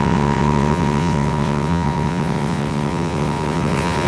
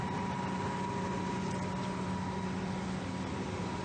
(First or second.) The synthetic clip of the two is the first